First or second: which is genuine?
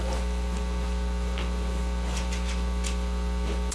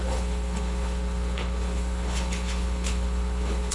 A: first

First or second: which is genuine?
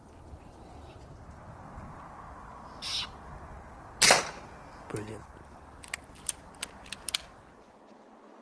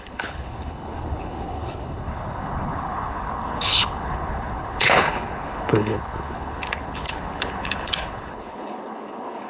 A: first